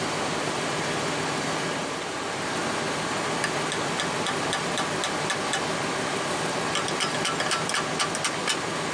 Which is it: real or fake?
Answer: real